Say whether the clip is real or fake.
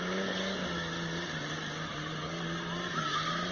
real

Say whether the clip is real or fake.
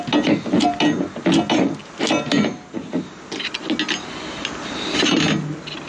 real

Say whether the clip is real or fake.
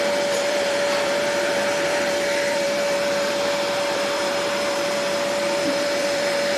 fake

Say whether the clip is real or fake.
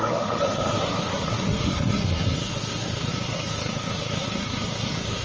fake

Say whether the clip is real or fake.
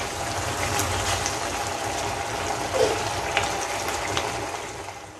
real